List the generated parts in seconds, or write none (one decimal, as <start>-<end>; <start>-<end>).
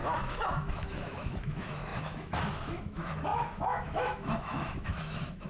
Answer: 0.0-5.5